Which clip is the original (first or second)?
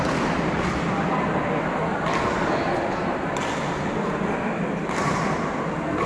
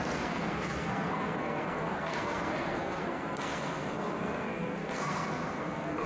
first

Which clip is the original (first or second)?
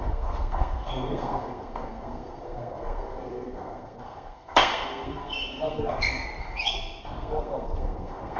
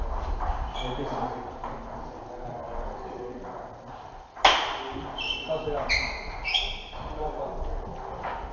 second